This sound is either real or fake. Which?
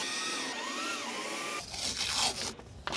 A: real